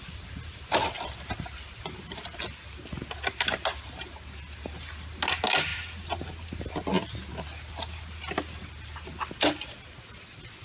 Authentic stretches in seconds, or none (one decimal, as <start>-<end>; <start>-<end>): 0.0-10.6

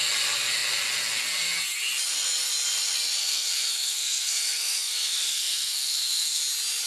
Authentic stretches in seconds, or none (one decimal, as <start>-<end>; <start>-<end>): 0.0-3.2; 6.4-6.9

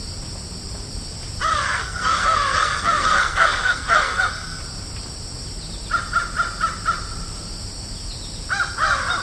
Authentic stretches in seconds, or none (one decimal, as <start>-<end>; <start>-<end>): 0.0-1.5; 4.6-9.2

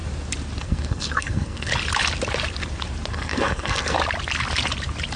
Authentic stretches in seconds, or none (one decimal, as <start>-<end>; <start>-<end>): 0.0-0.6; 1.7-3.1; 4.0-5.2